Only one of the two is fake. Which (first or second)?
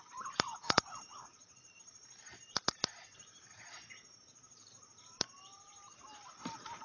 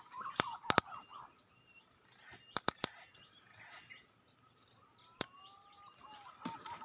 first